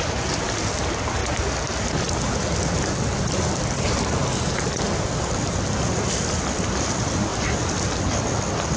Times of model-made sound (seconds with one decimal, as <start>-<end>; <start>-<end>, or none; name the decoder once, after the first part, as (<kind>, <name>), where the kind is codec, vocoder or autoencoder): none